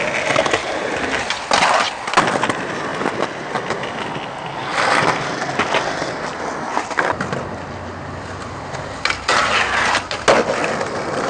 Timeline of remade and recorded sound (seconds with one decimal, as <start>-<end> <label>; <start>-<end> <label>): 0.0-11.3 recorded